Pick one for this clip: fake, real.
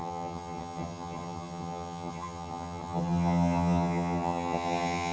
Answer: fake